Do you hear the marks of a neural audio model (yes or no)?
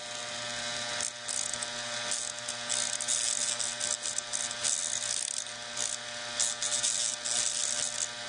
no